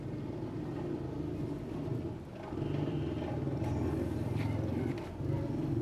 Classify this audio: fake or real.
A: real